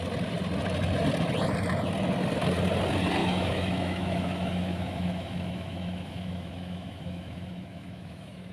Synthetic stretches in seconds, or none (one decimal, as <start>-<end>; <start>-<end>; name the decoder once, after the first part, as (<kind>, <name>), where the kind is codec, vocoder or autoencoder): 3.2-8.5 (autoencoder, DAC-VAE)